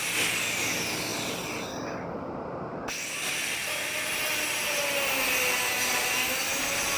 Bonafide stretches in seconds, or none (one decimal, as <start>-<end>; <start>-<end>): 0.0-7.0